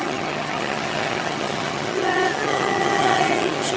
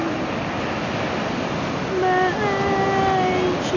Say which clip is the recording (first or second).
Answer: second